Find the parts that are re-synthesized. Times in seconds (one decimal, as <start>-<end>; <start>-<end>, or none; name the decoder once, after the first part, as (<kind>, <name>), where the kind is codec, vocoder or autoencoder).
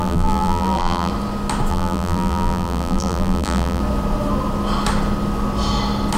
0.0-1.1 (vocoder, BigVGAN v2); 1.7-3.8